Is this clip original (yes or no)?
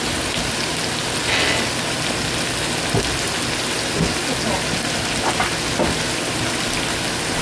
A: yes